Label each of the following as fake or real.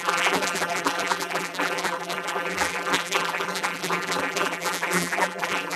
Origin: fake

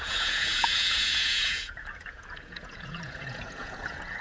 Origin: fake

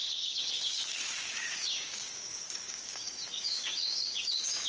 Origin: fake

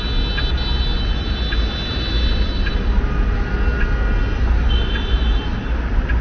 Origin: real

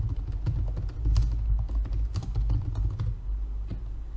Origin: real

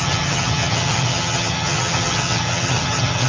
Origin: fake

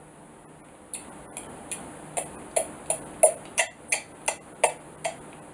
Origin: real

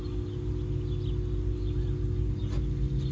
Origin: real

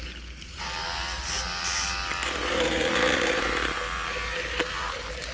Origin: fake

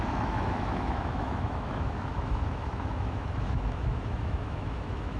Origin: fake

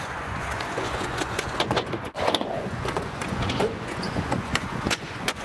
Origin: fake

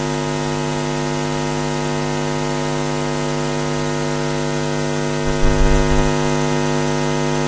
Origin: real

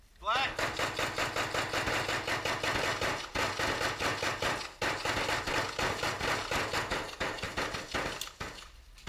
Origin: real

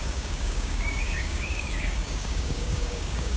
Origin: fake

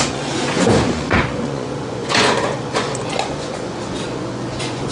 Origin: fake